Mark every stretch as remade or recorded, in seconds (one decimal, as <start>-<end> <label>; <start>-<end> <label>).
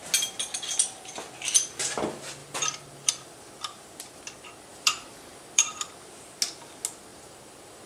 0.0-2.4 recorded; 2.4-4.1 remade; 4.1-4.7 recorded; 4.7-5.9 remade; 5.9-7.1 recorded; 7.1-7.9 remade